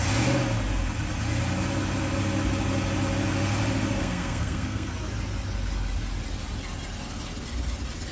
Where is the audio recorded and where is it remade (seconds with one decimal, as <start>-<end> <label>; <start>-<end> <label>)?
0.0-4.0 recorded; 4.0-4.9 remade; 4.9-8.1 recorded